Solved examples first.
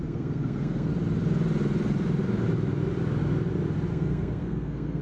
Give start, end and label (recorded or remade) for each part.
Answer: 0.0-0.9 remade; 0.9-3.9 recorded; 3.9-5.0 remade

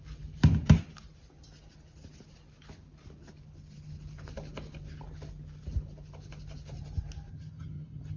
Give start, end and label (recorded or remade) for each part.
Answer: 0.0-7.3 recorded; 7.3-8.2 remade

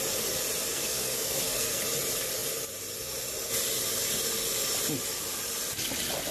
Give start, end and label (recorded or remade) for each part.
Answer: 0.0-0.7 recorded; 0.7-1.8 remade; 1.8-6.3 recorded

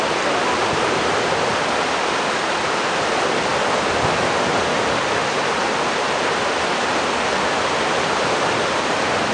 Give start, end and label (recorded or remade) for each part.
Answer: 0.0-9.3 recorded

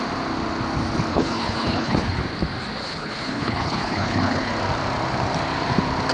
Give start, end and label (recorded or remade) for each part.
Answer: 0.0-1.1 recorded; 1.1-2.2 remade; 2.2-2.8 recorded; 2.8-4.5 remade; 4.5-6.1 recorded

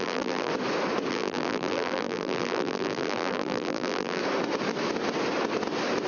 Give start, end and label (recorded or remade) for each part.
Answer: 0.0-0.5 remade; 0.5-1.1 recorded; 1.1-4.2 remade; 4.2-6.1 recorded

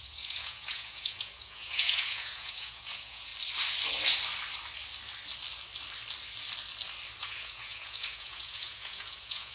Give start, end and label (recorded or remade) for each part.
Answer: 0.0-3.3 remade; 3.3-7.2 recorded; 7.2-9.5 remade